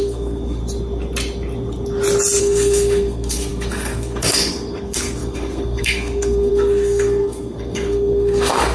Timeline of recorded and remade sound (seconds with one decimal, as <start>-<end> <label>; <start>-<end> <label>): 0.0-0.6 remade; 0.6-2.4 recorded; 2.4-8.7 remade